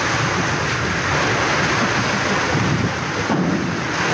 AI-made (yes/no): no